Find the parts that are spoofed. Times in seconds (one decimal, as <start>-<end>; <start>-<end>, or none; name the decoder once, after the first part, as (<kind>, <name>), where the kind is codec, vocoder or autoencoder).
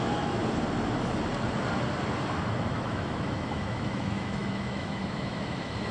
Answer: 0.0-0.4 (autoencoder, DAC-VAE); 2.7-5.9